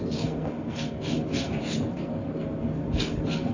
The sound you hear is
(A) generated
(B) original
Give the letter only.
A